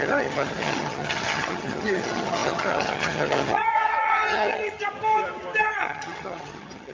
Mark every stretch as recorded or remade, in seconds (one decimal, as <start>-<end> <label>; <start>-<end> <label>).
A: 0.0-4.8 remade; 4.8-5.6 recorded; 5.6-6.9 remade